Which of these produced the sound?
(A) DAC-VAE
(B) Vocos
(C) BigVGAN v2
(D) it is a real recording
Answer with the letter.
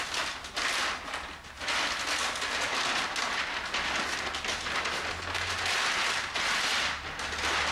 D